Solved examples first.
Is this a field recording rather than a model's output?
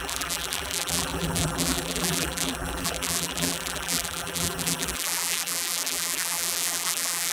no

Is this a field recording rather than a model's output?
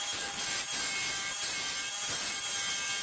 yes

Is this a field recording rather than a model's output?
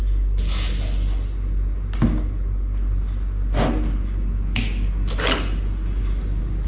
yes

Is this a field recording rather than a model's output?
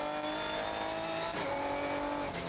yes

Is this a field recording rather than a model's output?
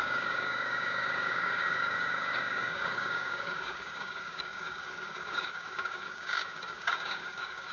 no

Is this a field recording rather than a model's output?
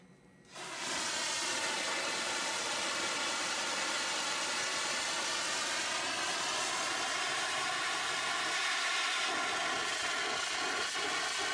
yes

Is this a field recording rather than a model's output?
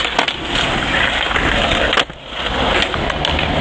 yes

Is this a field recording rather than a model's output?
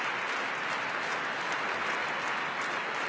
yes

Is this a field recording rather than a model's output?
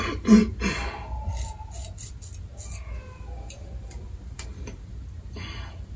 yes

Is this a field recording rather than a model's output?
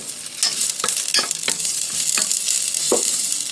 yes